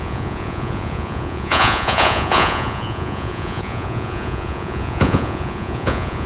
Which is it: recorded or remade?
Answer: remade